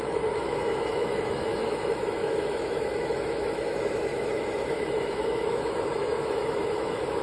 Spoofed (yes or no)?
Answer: yes